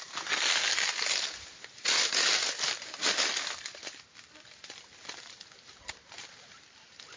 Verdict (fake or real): real